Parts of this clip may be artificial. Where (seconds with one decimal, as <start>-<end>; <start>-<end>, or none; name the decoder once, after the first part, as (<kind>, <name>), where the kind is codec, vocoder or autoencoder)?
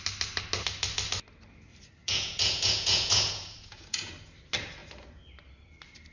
2.0-4.1 (vocoder, Vocos)